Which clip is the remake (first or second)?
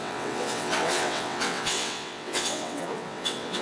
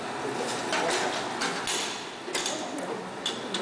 first